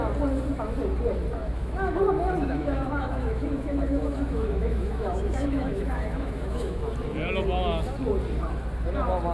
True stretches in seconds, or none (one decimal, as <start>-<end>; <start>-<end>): 0.0-1.4; 2.0-2.4; 6.8-9.3